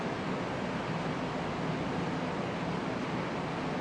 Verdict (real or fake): real